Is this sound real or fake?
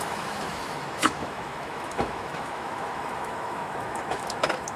fake